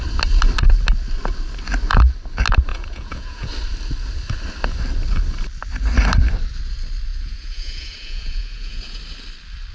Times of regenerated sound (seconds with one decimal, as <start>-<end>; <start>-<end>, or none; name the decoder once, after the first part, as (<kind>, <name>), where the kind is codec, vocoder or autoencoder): 2.7-3.5 (vocoder, Vocos); 7.1-9.0